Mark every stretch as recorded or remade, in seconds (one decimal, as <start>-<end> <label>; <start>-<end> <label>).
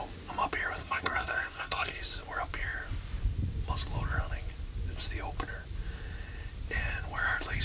0.0-0.8 recorded; 0.8-2.0 remade; 2.0-7.6 recorded